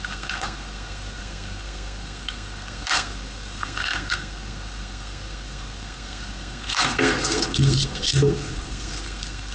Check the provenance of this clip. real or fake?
fake